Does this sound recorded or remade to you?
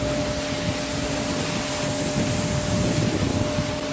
recorded